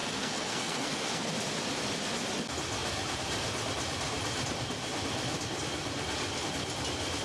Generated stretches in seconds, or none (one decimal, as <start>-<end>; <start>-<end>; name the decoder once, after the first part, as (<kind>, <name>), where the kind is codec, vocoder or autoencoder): 0.0-1.3 (codec, SNAC)